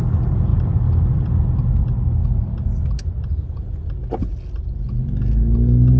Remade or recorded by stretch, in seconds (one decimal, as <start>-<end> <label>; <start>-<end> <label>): 0.0-6.0 recorded